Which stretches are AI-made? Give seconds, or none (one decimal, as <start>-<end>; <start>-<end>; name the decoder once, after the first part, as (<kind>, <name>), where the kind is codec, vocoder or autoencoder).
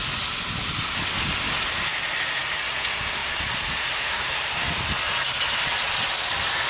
1.9-2.4 (vocoder, BigVGAN v2); 3.2-4.5